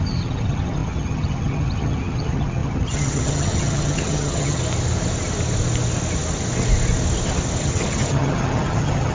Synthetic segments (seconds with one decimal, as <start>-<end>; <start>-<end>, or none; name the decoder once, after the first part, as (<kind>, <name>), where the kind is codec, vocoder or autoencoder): 0.0-4.6 (vocoder, HiFi-GAN); 7.6-9.1